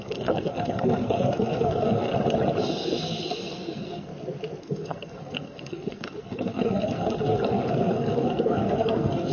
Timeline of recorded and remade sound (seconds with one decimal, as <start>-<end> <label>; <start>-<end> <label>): 0.0-2.1 remade; 2.1-2.7 recorded; 2.7-4.1 remade; 4.1-4.6 recorded; 4.6-9.3 remade